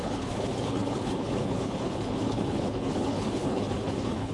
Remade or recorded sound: remade